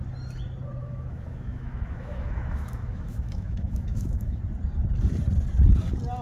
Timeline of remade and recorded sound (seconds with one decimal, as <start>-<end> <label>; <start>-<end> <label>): 0.0-0.8 recorded; 0.8-4.4 remade; 4.4-6.2 recorded